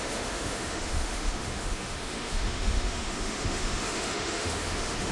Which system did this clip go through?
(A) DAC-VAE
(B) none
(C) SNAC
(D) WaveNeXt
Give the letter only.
A